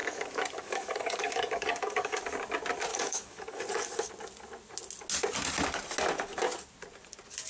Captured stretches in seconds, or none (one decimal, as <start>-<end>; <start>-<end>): 2.2-2.9; 4.1-7.5